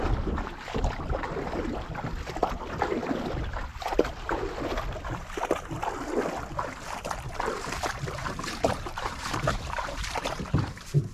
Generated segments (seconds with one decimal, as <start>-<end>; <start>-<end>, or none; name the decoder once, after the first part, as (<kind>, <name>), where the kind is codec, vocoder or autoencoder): 3.7-4.4 (vocoder, BigVGAN v2); 8.2-11.1